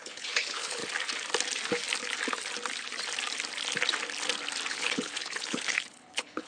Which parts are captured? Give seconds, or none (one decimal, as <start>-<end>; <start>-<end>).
0.8-4.7

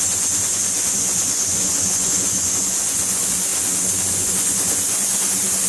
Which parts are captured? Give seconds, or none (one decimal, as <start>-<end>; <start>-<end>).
3.5-4.1